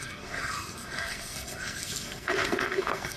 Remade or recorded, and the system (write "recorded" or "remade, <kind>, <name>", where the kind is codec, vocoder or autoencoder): remade, codec, SNAC